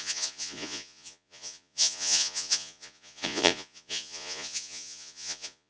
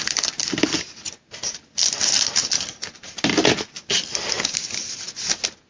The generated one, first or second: first